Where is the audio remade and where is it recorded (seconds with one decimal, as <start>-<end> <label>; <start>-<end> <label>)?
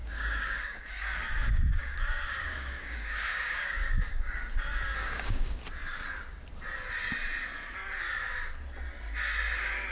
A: 0.0-4.4 remade; 4.4-5.0 recorded; 5.0-5.6 remade; 5.6-9.9 recorded